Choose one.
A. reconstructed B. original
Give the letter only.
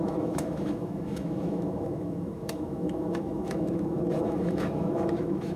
A